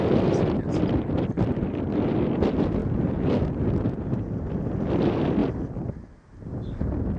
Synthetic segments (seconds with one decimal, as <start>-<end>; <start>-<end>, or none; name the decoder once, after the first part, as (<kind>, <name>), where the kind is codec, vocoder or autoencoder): none